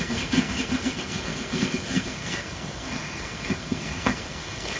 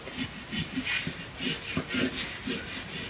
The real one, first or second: second